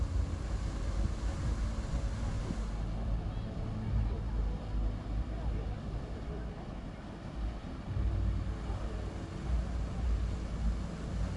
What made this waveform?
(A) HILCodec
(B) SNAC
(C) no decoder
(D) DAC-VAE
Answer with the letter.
C